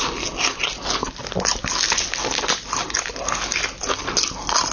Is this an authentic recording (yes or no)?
yes